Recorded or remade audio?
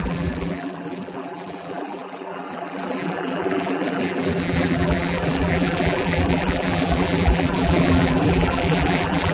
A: remade